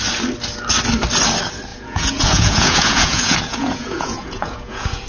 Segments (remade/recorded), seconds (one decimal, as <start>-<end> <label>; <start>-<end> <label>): 0.0-1.7 recorded; 1.7-5.1 remade